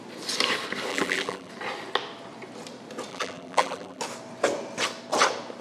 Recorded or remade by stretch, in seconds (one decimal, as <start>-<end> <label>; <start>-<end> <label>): 0.0-0.9 recorded; 0.9-1.5 remade; 1.5-3.1 recorded; 3.1-4.0 remade; 4.0-5.6 recorded